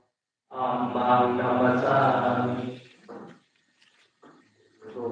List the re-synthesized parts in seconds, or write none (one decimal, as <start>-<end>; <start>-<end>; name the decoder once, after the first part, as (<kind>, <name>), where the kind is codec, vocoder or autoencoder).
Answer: none